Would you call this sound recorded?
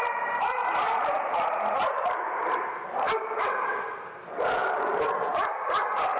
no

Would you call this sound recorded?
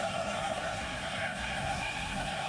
no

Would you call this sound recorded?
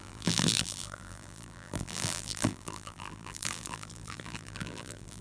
no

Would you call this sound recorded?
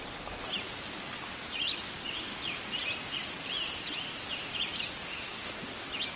yes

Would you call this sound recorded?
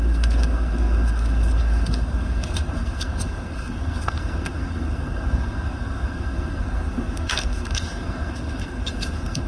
no